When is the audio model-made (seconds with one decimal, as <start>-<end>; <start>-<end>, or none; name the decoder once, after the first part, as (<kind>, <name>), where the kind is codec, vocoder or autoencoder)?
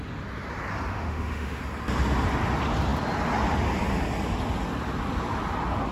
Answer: 0.9-1.6 (autoencoder, DAC-VAE)